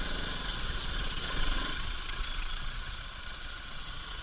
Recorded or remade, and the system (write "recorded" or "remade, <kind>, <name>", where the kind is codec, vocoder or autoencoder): remade, vocoder, Vocos